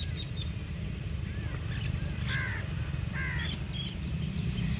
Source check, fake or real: fake